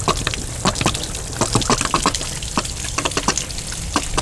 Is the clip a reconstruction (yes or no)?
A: no